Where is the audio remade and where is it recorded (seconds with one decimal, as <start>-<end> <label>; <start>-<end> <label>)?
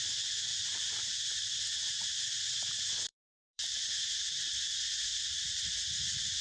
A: 0.0-0.5 recorded; 0.5-1.6 remade; 1.6-3.1 recorded; 3.1-4.0 remade; 4.0-5.1 recorded; 5.1-5.7 remade; 5.7-6.4 recorded